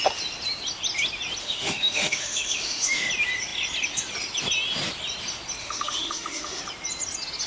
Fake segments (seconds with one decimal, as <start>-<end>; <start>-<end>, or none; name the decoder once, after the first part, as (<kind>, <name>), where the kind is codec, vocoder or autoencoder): 1.4-3.1 (autoencoder, DAC-VAE); 5.6-6.6